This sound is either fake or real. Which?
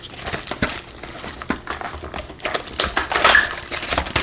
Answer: real